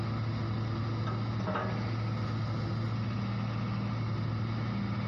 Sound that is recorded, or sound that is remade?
recorded